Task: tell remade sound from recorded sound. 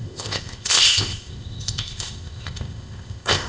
remade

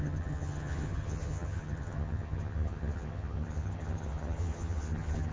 remade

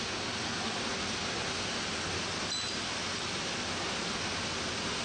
recorded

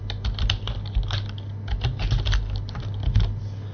recorded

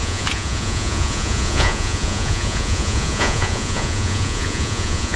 remade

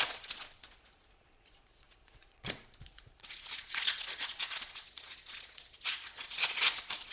remade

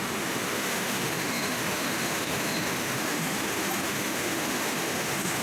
remade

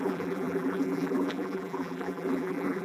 remade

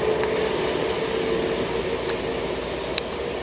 recorded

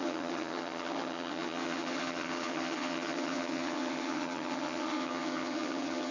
remade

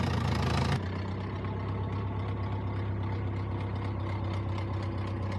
recorded